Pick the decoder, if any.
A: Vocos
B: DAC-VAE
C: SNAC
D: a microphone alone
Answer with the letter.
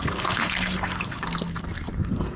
C